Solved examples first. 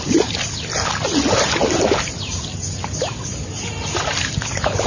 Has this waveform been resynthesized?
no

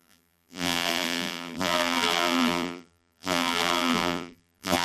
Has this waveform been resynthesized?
yes